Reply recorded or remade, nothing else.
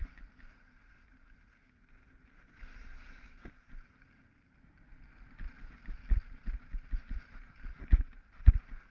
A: recorded